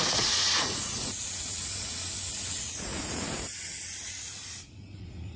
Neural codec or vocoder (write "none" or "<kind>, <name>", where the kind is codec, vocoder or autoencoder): vocoder, Vocos